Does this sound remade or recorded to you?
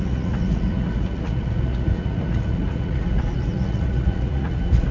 remade